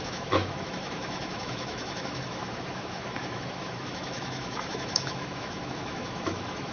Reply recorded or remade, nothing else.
remade